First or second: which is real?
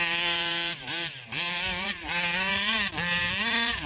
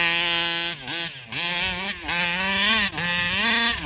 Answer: second